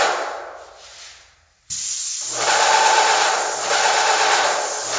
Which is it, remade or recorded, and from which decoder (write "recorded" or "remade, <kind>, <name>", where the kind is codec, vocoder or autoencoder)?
recorded